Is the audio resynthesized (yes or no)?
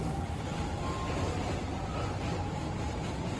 no